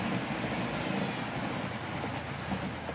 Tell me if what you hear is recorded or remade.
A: recorded